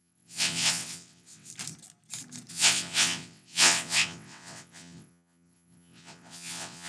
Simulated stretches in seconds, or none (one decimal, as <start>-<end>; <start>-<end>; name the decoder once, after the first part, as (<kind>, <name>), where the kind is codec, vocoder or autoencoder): 0.0-1.5 (vocoder, WaveNeXt); 2.5-6.9